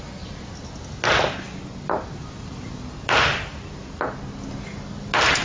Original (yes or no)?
yes